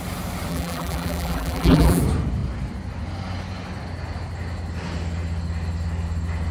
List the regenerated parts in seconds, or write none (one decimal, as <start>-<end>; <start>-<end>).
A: 0.5-2.0